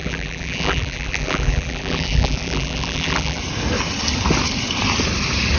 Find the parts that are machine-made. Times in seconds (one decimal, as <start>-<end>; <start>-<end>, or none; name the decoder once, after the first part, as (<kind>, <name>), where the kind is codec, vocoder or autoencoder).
0.0-3.4 (vocoder, BigVGAN v2)